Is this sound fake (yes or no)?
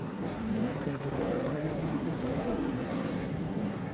yes